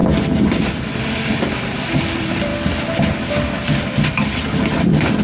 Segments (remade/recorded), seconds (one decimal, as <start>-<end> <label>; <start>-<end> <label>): 0.0-1.0 recorded; 1.0-2.5 remade; 2.5-3.4 recorded; 3.4-5.2 remade